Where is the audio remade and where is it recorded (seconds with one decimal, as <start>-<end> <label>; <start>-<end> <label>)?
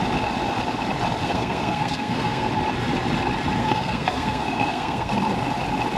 0.0-1.2 recorded; 1.2-2.5 remade; 2.5-3.6 recorded; 3.6-5.1 remade; 5.1-6.0 recorded